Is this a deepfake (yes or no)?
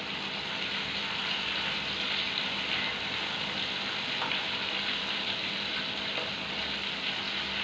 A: no